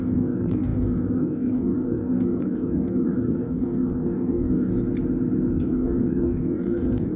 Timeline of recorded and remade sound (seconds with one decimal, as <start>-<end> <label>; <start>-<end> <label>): 0.0-4.7 remade; 4.7-5.5 recorded; 5.5-7.2 remade